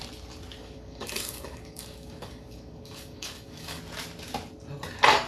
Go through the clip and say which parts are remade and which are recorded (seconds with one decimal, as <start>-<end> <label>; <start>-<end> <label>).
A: 0.0-0.6 recorded; 0.6-3.8 remade; 3.8-5.3 recorded